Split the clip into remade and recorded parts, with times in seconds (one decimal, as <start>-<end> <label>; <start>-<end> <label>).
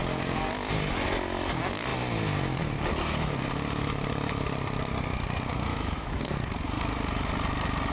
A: 0.0-5.7 recorded; 5.7-6.4 remade; 6.4-7.9 recorded